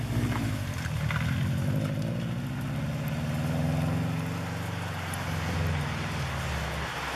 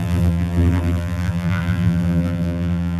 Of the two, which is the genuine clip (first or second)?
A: first